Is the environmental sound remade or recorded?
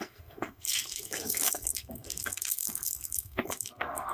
remade